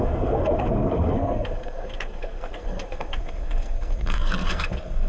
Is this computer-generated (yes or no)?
yes